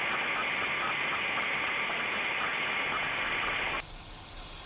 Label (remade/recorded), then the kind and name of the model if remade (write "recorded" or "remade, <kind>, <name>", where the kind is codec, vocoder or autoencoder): recorded